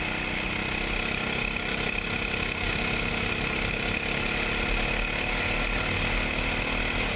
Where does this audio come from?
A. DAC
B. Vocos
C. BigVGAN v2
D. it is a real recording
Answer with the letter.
D